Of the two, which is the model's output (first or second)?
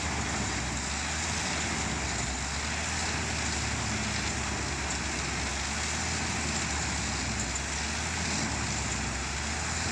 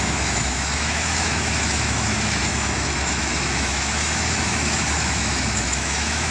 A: second